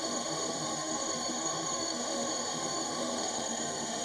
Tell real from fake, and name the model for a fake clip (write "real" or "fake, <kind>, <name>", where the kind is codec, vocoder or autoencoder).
fake, autoencoder, DAC-VAE